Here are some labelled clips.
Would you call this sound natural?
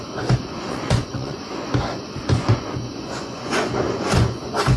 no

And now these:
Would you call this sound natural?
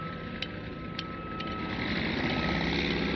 yes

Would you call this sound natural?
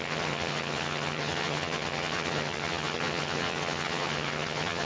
no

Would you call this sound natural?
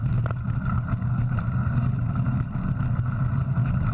yes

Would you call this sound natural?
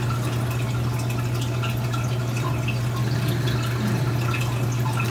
yes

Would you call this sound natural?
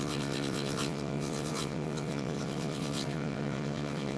no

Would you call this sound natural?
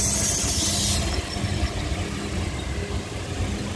yes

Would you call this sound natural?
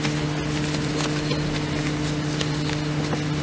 yes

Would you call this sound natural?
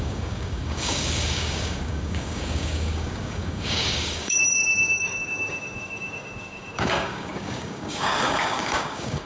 no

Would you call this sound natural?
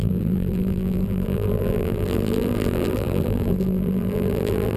no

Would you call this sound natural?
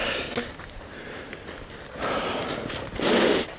yes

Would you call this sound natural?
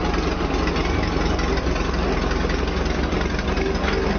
yes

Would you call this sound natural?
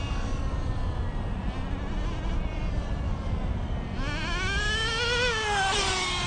yes